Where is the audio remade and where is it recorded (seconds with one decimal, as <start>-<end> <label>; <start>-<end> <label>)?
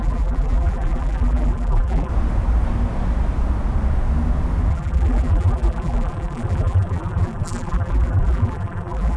0.0-2.1 remade; 2.1-4.7 recorded; 4.7-9.2 remade